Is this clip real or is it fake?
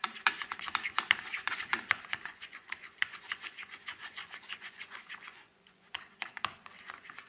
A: fake